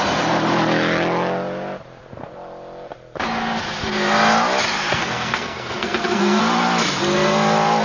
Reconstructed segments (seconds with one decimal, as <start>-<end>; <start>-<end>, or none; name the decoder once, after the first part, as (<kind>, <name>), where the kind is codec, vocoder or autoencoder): 4.9-6.4 (codec, SNAC)